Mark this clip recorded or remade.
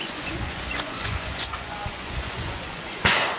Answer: remade